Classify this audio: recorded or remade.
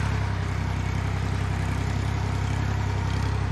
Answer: recorded